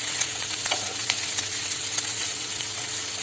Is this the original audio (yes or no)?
no